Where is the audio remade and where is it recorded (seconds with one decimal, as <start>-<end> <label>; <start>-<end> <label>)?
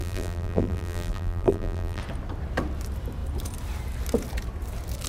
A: 0.0-2.0 remade; 2.0-5.1 recorded